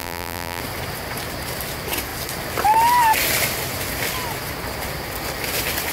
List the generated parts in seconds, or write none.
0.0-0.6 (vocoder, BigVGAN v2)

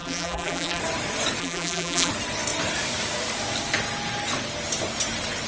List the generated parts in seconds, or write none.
0.0-0.8 (vocoder, BigVGAN v2); 1.4-2.1

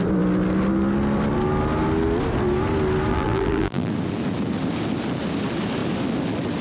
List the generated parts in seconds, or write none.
3.1-3.9 (vocoder, BigVGAN v2)

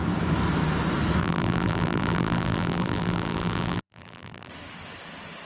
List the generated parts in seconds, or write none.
1.2-4.5 (vocoder, BigVGAN v2)

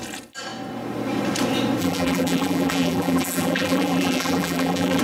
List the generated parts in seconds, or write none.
1.8-5.0 (vocoder, BigVGAN v2)